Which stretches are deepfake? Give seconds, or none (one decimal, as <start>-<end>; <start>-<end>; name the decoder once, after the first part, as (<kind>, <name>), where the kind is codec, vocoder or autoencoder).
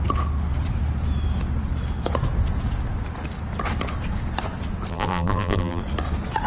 4.9-5.8 (vocoder, BigVGAN v2)